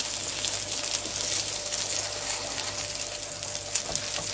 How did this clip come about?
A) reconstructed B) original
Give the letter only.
B